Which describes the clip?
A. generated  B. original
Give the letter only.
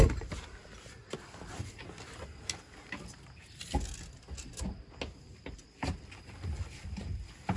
B